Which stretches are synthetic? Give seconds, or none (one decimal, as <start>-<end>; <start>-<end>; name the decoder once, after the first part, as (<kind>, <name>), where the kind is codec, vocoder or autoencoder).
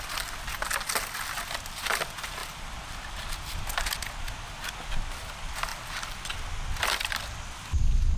2.4-3.8 (vocoder, BigVGAN v2)